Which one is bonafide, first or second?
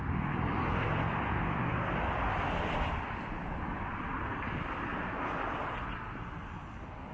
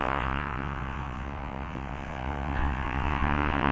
first